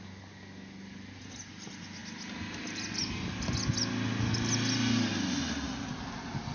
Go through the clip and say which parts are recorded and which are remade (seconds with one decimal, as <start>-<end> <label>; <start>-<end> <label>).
0.0-6.5 recorded